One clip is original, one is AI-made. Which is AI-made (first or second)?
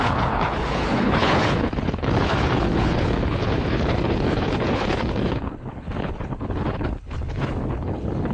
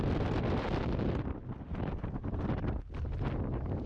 first